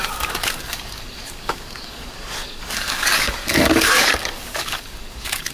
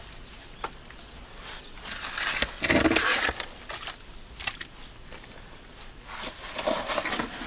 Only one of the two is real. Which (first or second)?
second